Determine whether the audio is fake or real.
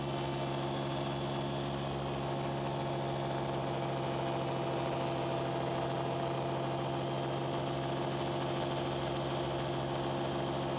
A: real